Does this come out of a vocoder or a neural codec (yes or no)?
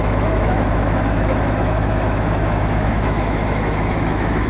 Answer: yes